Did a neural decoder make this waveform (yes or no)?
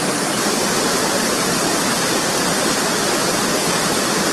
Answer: no